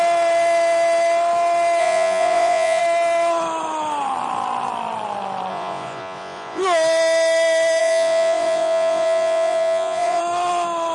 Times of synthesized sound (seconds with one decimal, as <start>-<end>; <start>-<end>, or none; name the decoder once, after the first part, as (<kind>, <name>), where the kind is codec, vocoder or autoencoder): 1.8-2.8 (vocoder, Vocos); 5.5-6.6; 7.8-10.2